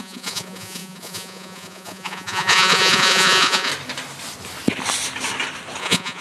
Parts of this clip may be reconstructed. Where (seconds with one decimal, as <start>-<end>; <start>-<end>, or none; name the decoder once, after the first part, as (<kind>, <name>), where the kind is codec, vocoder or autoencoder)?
0.0-3.7 (vocoder, Vocos); 5.8-6.2